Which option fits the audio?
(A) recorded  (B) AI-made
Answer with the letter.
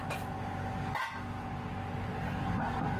A